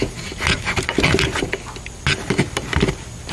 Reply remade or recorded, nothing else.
recorded